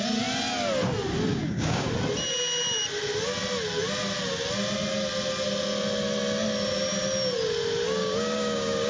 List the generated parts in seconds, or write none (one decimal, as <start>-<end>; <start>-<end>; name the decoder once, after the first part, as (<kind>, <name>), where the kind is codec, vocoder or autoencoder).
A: 1.3-1.9 (codec, DAC); 8.0-8.9